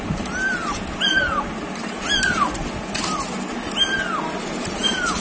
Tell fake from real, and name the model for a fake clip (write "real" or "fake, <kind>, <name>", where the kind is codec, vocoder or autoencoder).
real